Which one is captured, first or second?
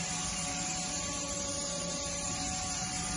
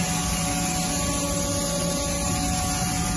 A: second